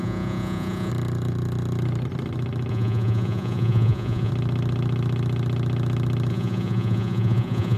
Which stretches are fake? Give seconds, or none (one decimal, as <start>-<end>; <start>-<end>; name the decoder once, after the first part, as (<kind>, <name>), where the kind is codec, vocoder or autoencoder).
0.0-0.9 (vocoder, Vocos); 2.7-4.3; 6.3-7.8